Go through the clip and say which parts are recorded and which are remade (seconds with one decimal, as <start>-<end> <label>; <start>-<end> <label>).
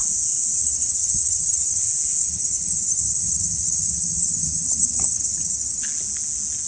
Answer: 0.0-0.6 recorded; 0.6-1.8 remade; 1.8-2.2 recorded; 2.2-5.8 remade; 5.8-6.7 recorded